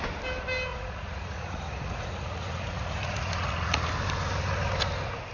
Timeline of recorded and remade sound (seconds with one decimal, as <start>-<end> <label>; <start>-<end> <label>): 0.0-0.7 recorded; 0.7-3.9 remade; 3.9-5.3 recorded